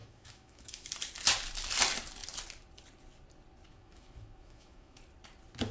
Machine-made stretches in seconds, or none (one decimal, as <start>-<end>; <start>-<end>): 0.0-0.9; 3.7-5.0